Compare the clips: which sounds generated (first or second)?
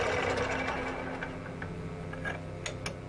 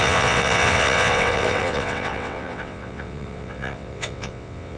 second